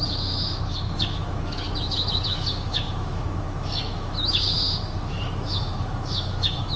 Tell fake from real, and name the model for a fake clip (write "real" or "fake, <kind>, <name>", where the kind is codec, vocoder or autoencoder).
fake, autoencoder, DAC-VAE